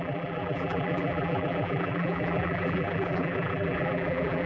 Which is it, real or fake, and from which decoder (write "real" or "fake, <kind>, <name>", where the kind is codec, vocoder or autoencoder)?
fake, vocoder, BigVGAN v2